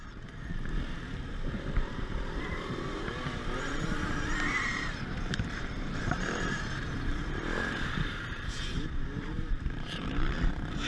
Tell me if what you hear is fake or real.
fake